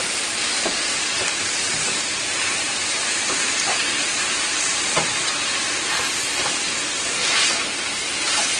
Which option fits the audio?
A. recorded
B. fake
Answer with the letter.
B